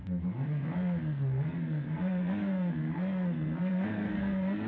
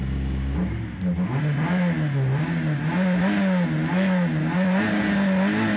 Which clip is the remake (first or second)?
first